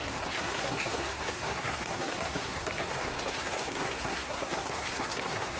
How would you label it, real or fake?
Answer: fake